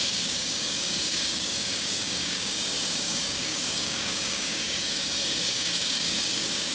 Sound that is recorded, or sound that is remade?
remade